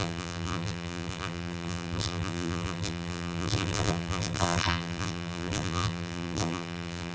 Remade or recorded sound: remade